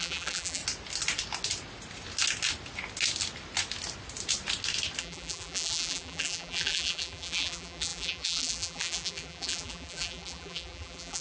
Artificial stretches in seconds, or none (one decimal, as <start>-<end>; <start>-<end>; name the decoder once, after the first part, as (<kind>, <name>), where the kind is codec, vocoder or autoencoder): 0.0-0.6 (vocoder, BigVGAN v2); 5.0-11.2